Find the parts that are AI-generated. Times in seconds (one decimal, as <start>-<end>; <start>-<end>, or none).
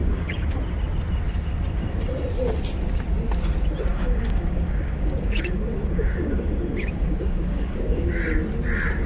0.0-0.5; 3.9-8.1